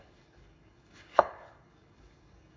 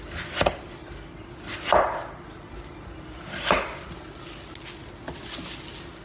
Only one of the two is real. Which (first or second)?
second